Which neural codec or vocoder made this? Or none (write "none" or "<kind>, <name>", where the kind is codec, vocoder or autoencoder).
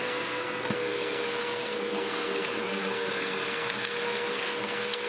codec, SNAC